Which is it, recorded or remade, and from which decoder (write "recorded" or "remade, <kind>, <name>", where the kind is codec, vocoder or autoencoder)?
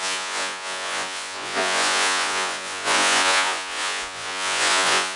remade, vocoder, Vocos